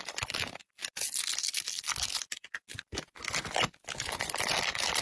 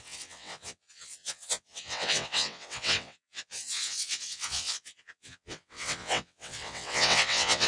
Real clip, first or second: first